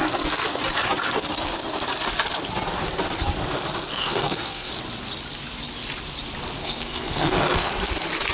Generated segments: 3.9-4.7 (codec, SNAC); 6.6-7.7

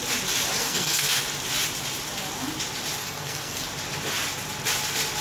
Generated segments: 0.6-1.2 (codec, SNAC); 3.0-3.6

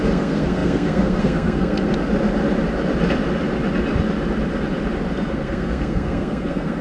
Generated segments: 0.0-1.9 (codec, SNAC); 5.3-6.8

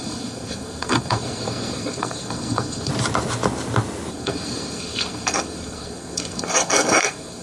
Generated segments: 0.0-2.9 (codec, SNAC); 4.1-7.4

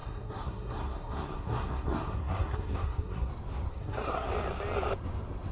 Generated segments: 0.0-3.3 (codec, SNAC); 3.7-4.3

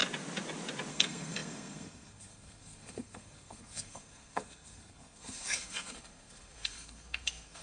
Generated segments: 0.9-7.6 (codec, SNAC)

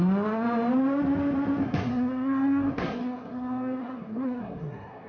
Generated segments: 1.6-5.1 (codec, SNAC)